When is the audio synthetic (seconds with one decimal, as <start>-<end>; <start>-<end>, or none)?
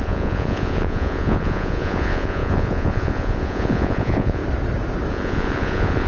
0.0-4.4; 5.1-6.1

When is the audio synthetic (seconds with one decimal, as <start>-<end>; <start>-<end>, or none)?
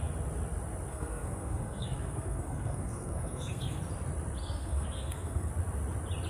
0.9-3.8; 4.4-5.5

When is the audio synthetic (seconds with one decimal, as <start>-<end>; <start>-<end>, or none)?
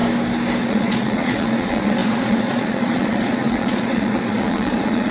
0.6-5.1